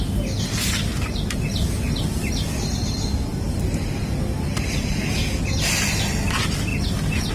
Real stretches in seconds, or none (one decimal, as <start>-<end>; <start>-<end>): 0.0-7.3